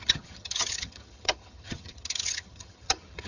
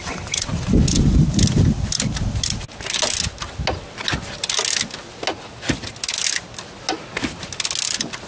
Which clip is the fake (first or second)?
first